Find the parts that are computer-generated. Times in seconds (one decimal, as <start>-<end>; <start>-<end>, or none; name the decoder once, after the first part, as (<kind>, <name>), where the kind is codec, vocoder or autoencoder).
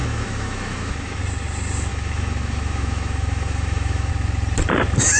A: 0.0-1.2 (autoencoder, DAC-VAE); 1.9-4.1